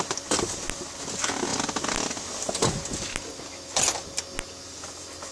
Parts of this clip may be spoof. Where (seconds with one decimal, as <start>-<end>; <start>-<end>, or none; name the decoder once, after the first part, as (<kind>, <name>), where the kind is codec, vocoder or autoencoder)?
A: none